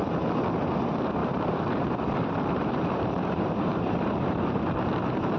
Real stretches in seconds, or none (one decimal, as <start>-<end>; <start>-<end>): 0.0-1.2; 4.4-5.4